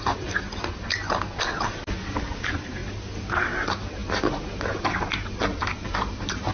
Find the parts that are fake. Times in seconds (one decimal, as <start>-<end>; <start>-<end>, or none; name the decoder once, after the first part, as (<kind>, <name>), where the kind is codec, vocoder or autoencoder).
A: 5.9-6.5 (vocoder, BigVGAN v2)